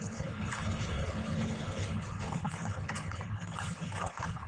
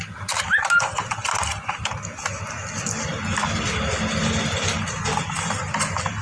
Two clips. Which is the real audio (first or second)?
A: second